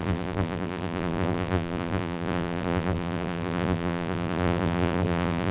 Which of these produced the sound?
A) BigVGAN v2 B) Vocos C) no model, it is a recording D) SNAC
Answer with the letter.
A